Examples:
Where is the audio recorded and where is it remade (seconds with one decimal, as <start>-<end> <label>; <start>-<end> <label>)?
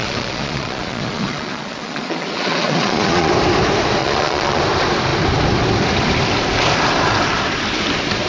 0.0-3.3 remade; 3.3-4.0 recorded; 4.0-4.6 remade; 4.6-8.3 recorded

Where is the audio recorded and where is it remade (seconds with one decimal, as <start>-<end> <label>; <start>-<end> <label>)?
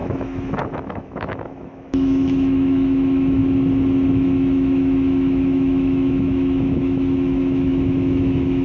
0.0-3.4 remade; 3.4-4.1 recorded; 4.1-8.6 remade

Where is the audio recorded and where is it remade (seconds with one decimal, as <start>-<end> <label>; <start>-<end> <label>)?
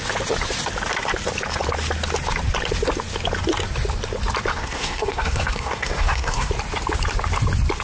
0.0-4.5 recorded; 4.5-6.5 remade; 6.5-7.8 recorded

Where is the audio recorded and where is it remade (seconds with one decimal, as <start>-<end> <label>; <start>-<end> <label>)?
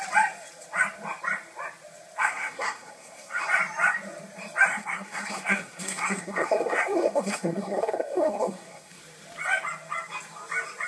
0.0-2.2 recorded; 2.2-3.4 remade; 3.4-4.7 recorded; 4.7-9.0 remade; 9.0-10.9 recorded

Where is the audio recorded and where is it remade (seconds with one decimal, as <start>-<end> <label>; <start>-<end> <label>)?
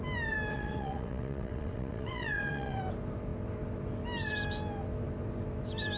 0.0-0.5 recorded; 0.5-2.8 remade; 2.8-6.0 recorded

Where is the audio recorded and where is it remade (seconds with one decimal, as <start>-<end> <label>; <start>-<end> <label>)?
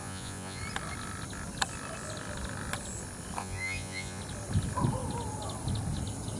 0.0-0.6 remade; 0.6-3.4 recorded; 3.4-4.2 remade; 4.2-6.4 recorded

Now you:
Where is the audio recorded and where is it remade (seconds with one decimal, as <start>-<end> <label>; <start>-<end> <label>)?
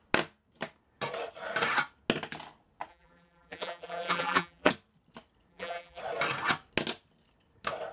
0.0-2.9 recorded; 2.9-4.7 remade; 4.7-5.5 recorded; 5.5-6.0 remade; 6.0-7.9 recorded